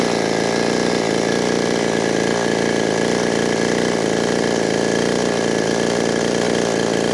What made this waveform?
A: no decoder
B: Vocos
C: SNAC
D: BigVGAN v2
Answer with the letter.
A